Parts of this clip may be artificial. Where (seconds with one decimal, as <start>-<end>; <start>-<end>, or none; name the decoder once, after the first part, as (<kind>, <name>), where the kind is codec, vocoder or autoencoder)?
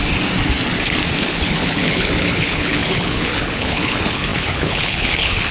1.2-5.5 (codec, HILCodec)